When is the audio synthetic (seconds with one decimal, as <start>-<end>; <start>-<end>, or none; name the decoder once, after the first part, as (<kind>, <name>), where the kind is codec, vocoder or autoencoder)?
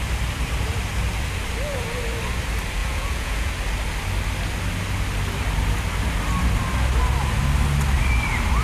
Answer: 2.8-3.5 (vocoder, Vocos)